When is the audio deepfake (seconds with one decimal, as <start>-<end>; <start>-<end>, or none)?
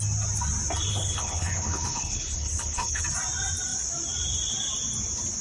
0.9-3.0